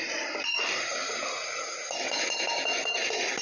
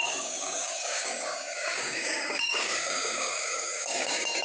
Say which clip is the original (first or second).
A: first